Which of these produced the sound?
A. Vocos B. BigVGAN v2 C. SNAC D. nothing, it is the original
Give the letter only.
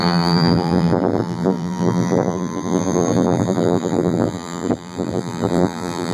B